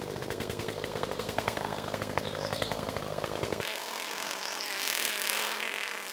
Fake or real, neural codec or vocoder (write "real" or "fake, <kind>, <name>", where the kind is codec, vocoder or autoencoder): fake, codec, SNAC